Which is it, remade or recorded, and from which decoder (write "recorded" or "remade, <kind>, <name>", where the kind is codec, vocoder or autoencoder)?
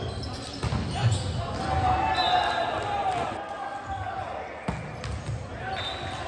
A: recorded